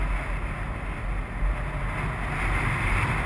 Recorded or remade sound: recorded